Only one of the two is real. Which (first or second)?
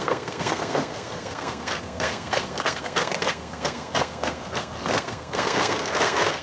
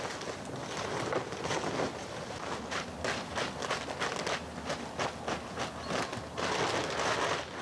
second